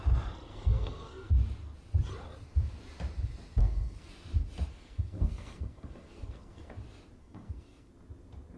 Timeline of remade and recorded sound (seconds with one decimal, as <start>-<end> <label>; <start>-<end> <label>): 0.0-0.5 recorded; 0.5-1.3 remade; 1.3-3.6 recorded; 3.6-4.1 remade; 4.1-4.7 recorded; 4.7-6.7 remade; 6.7-7.2 recorded; 7.2-7.9 remade; 7.9-8.6 recorded